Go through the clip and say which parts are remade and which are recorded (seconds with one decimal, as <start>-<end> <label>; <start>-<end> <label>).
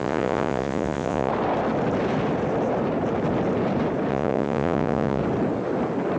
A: 0.0-1.3 remade; 1.3-4.1 recorded; 4.1-5.2 remade; 5.2-6.2 recorded